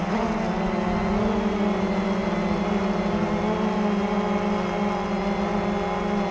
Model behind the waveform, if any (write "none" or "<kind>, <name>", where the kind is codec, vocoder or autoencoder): none